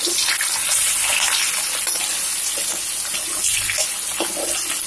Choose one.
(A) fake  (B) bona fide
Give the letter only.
B